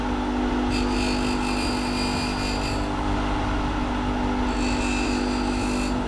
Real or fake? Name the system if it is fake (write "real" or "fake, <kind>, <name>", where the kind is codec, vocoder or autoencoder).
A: real